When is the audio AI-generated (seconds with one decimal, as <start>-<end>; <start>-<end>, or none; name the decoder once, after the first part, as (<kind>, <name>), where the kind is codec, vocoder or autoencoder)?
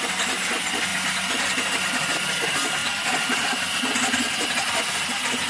0.9-2.0 (vocoder, BigVGAN v2)